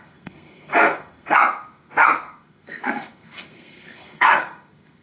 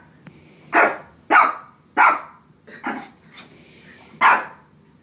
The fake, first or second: first